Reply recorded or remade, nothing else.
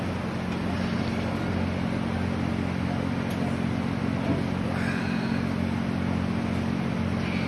recorded